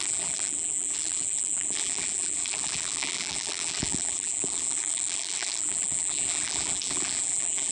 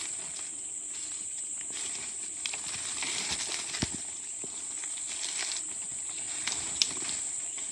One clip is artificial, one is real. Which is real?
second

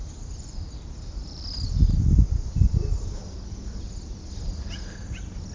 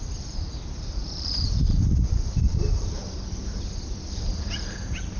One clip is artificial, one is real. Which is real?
first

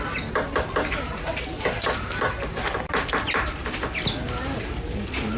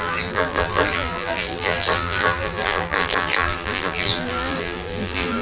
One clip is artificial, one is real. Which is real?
first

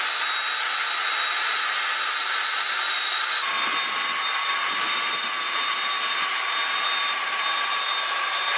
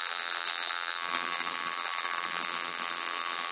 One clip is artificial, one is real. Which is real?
first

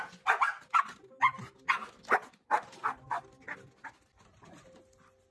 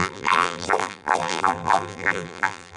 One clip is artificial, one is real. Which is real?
first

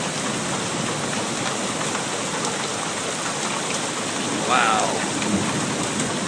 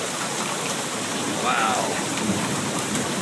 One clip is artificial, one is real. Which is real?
first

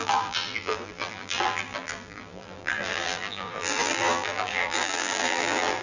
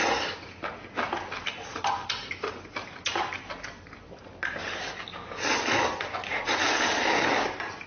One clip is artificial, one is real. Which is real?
second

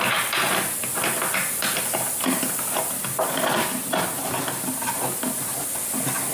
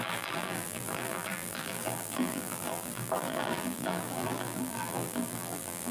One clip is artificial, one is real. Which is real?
first